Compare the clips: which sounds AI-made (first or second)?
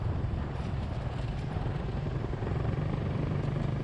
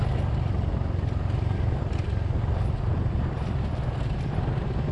first